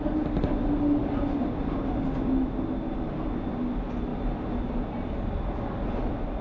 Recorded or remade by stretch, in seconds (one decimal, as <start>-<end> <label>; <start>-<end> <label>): 0.0-6.4 recorded

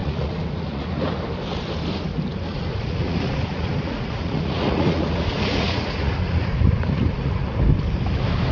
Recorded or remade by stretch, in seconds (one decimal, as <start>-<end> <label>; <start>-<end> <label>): 0.0-1.1 remade; 1.1-2.5 recorded; 2.5-7.5 remade; 7.5-8.5 recorded

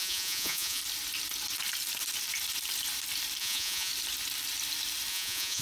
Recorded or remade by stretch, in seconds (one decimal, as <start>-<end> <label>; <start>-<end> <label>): 0.0-0.8 remade; 0.8-3.4 recorded; 3.4-3.9 remade; 3.9-5.1 recorded; 5.1-5.6 remade

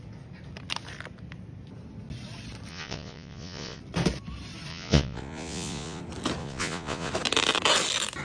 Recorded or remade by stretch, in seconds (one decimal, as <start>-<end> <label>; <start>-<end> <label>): 0.0-2.7 recorded; 2.7-3.8 remade; 3.8-4.7 recorded; 4.7-6.0 remade; 6.0-6.4 recorded; 6.4-7.1 remade; 7.1-8.2 recorded

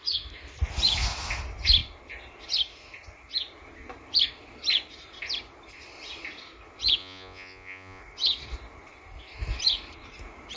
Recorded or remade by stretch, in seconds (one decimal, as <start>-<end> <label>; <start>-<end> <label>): 0.0-7.0 recorded; 7.0-8.0 remade; 8.0-10.6 recorded

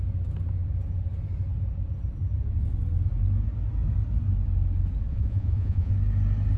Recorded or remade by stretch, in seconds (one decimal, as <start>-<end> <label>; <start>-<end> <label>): 0.0-5.1 recorded; 5.1-5.9 remade; 5.9-6.6 recorded